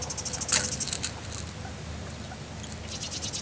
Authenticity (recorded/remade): recorded